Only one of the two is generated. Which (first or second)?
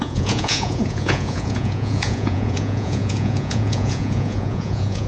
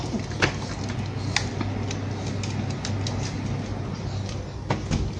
first